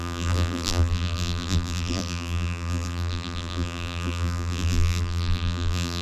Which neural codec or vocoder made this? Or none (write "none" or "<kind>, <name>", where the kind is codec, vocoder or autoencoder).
vocoder, BigVGAN v2